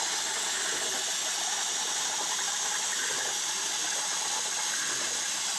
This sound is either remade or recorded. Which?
recorded